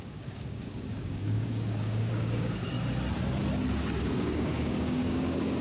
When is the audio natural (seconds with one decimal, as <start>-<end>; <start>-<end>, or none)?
2.6-4.0